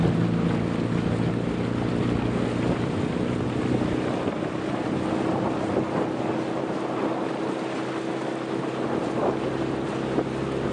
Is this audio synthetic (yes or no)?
no